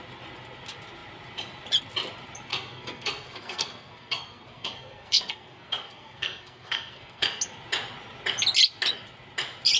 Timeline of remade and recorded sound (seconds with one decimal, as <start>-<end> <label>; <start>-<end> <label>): 0.0-2.5 recorded; 2.5-7.4 remade; 7.4-9.8 recorded